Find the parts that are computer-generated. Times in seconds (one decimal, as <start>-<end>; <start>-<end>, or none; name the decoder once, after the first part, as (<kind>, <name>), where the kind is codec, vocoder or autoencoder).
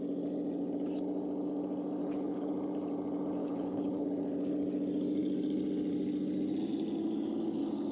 2.0-2.5 (codec, HILCodec); 3.4-4.1